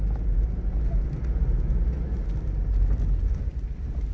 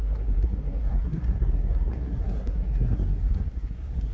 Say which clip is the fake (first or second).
second